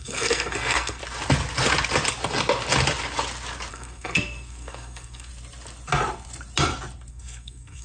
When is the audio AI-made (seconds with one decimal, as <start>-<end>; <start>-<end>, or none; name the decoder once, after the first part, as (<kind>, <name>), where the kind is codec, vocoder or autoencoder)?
0.0-1.0 (codec, SNAC); 3.7-5.3; 7.1-7.8